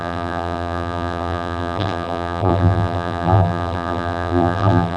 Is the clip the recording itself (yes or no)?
no